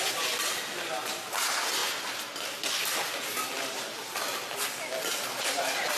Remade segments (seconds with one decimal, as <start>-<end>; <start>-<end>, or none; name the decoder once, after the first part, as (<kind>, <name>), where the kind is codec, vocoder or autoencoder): none

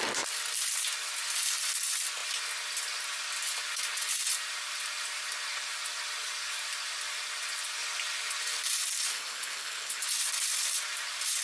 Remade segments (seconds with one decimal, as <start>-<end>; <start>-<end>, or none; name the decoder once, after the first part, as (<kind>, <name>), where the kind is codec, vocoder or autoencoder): 9.1-10.0 (codec, HILCodec)

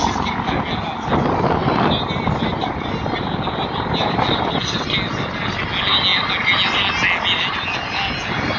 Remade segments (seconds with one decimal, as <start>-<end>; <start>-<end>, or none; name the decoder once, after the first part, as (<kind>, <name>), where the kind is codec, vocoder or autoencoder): none

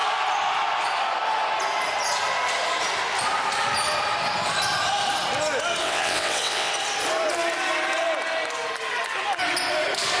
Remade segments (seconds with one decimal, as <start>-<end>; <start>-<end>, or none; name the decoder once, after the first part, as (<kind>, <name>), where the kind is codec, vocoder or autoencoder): 5.8-6.7 (vocoder, WaveNeXt)

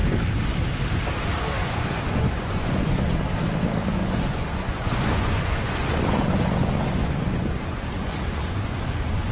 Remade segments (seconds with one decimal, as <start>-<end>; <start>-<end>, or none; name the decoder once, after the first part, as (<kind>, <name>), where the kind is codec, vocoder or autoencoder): 1.6-3.2 (vocoder, Vocos); 4.0-9.3